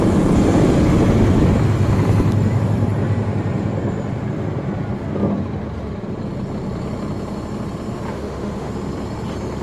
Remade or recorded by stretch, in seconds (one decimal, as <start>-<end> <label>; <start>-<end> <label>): 0.0-8.1 recorded; 8.1-8.7 remade; 8.7-9.6 recorded